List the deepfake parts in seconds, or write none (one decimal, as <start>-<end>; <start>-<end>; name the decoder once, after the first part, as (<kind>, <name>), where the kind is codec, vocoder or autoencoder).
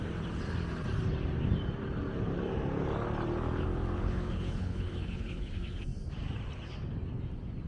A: 4.0-5.5 (codec, HILCodec)